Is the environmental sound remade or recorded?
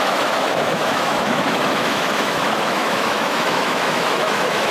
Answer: remade